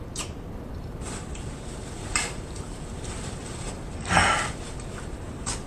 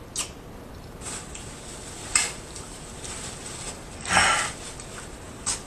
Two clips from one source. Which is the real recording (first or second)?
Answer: second